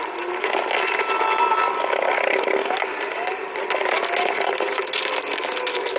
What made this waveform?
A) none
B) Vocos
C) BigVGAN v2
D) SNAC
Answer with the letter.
A